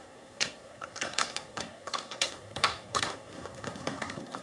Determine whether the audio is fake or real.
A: fake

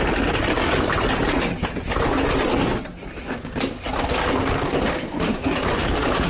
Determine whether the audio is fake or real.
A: real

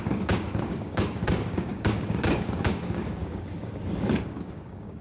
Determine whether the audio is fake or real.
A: fake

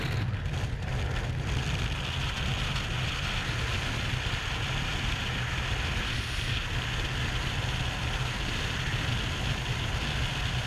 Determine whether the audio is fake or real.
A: real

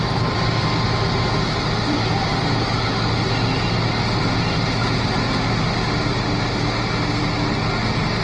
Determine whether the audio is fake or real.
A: real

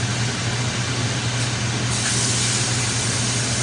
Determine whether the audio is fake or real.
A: real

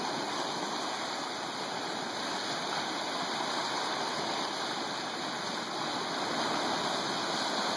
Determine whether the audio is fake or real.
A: real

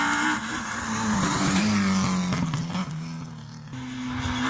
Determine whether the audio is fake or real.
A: real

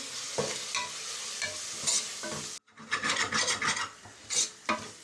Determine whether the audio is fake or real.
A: real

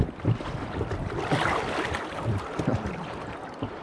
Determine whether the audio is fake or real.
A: real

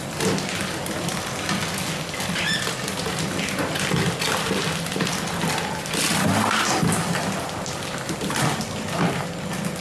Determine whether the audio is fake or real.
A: real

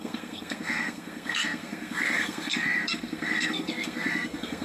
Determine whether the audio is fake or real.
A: fake